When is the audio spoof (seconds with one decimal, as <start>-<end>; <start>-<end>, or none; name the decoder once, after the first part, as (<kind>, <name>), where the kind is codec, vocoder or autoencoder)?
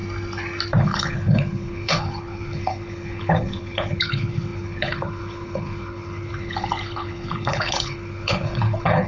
0.8-9.1 (codec, HILCodec)